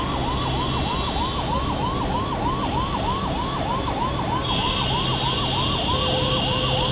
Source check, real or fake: real